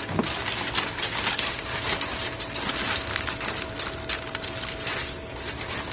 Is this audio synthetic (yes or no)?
no